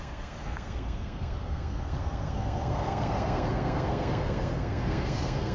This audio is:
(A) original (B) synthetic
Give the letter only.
B